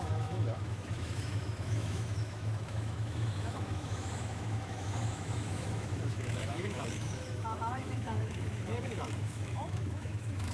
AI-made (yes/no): yes